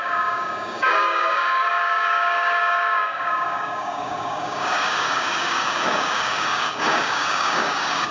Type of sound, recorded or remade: remade